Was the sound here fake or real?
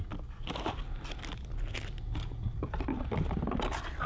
real